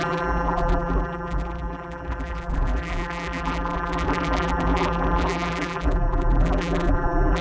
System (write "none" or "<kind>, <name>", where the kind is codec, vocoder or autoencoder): vocoder, BigVGAN v2